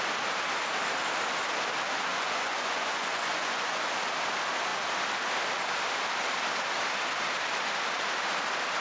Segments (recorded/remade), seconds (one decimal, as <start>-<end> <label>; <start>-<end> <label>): 0.0-2.1 recorded; 2.1-3.9 remade; 3.9-8.8 recorded